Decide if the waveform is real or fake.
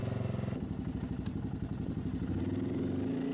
real